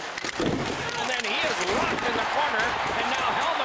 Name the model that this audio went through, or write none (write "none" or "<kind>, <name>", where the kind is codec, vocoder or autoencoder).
none